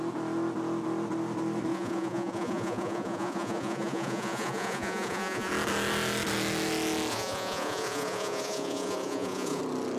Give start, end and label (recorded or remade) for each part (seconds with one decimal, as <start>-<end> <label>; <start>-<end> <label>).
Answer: 0.0-1.7 recorded; 1.7-5.5 remade; 5.5-7.1 recorded; 7.1-9.6 remade; 9.6-10.0 recorded